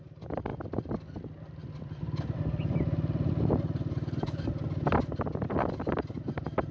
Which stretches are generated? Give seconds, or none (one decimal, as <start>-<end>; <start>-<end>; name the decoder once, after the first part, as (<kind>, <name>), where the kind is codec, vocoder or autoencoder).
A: none